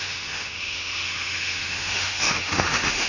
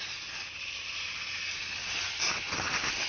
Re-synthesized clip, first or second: first